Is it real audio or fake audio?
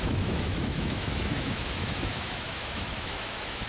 fake